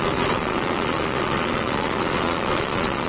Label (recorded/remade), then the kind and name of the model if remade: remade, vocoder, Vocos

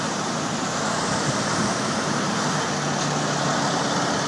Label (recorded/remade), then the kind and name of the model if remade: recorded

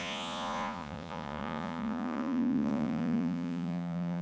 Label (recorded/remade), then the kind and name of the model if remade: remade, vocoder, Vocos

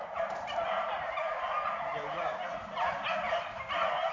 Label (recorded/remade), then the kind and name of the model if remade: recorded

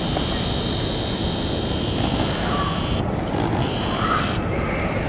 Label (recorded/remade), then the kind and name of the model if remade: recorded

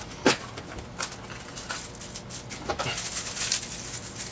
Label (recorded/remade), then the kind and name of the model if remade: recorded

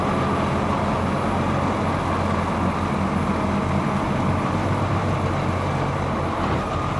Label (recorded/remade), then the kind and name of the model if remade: recorded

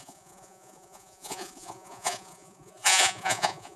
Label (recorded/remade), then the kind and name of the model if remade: remade, vocoder, Vocos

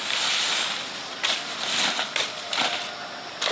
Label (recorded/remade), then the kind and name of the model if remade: recorded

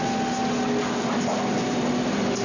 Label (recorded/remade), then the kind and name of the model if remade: recorded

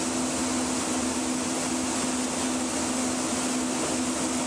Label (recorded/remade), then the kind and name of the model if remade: recorded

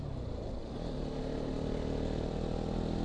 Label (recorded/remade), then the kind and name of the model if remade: recorded